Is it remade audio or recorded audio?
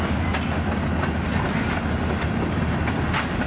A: recorded